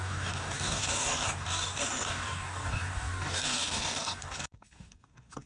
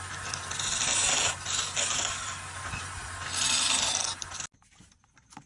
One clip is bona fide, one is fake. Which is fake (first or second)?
first